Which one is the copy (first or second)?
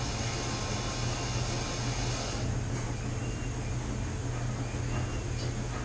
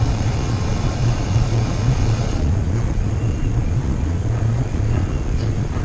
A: second